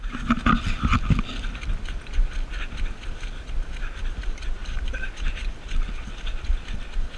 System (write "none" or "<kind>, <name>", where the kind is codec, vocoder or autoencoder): none